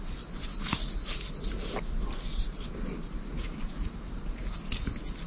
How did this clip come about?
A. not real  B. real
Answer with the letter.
B